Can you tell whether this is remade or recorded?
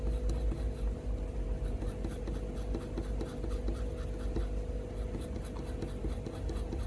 recorded